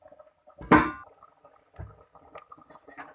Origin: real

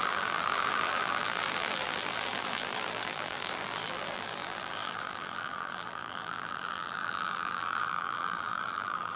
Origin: fake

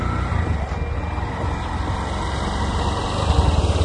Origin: real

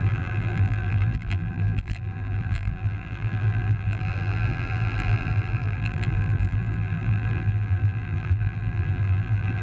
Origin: fake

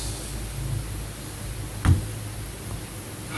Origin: real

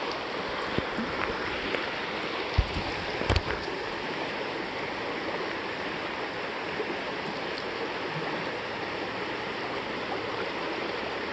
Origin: real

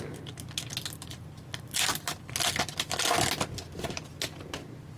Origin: real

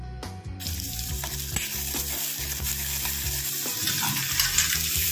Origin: fake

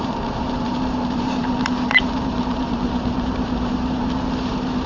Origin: fake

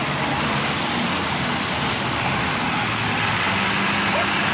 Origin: real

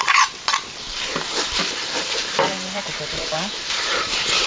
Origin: fake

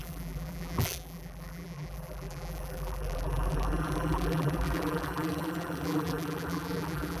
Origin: fake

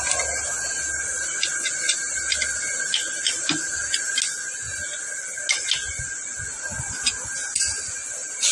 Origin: real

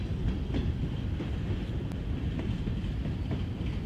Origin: fake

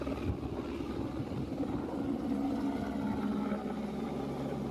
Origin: real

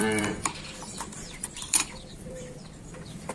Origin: fake